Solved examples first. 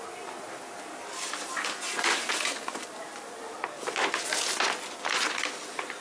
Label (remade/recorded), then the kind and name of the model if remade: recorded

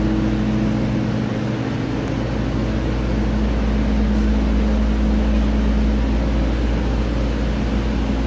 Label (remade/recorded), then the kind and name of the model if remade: recorded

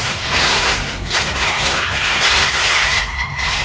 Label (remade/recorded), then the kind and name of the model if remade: remade, codec, SNAC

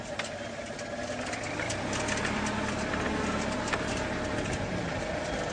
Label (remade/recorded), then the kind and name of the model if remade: recorded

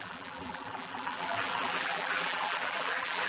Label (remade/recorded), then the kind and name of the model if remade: remade, vocoder, BigVGAN v2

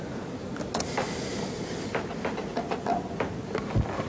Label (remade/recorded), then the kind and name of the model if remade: recorded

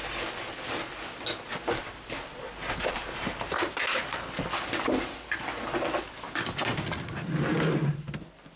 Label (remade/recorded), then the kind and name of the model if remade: recorded